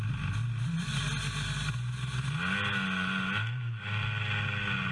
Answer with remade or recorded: recorded